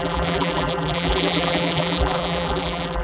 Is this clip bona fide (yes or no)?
no